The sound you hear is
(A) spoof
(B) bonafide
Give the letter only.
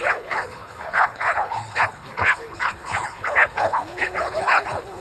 A